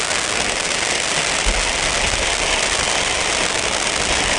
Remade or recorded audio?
recorded